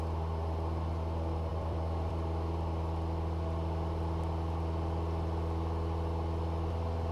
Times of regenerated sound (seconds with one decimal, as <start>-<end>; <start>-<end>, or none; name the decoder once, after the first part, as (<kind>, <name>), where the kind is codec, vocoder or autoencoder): 1.5-2.1 (vocoder, BigVGAN v2)